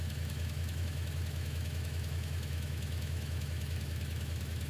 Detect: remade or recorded remade